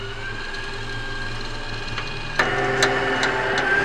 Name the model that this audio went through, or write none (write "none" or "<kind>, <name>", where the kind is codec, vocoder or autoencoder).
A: none